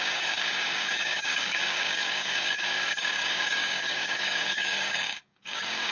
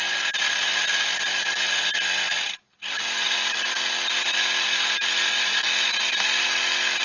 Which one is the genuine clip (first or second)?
second